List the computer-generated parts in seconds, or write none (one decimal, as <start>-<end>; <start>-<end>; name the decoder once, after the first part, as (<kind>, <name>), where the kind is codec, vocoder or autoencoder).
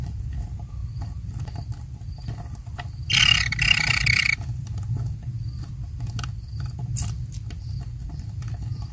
0.0-8.9 (vocoder, BigVGAN v2)